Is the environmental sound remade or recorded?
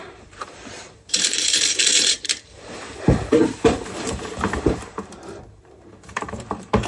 remade